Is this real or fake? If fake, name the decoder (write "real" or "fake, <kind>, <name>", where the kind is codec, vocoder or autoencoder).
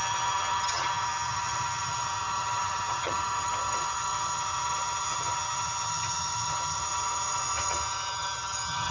fake, vocoder, HiFi-GAN